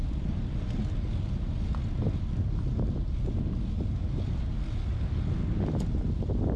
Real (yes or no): yes